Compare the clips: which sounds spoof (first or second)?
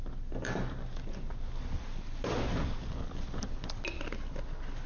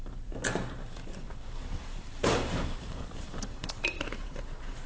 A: second